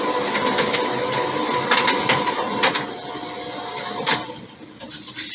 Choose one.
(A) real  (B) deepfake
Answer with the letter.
A